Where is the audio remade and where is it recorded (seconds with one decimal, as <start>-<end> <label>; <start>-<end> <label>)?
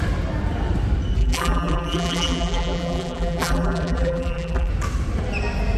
0.0-1.2 recorded; 1.2-4.7 remade; 4.7-5.8 recorded